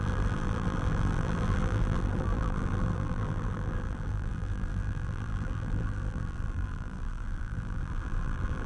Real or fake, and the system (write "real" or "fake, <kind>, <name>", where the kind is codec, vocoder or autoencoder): fake, vocoder, BigVGAN v2